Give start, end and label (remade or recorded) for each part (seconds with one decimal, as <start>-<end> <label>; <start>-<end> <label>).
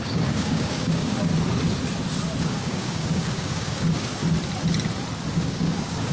0.0-1.3 remade; 1.3-2.4 recorded; 2.4-4.2 remade; 4.2-5.3 recorded; 5.3-6.1 remade